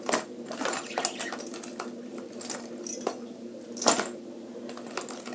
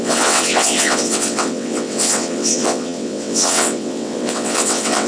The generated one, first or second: second